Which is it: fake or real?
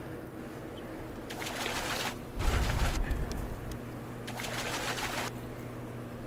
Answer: real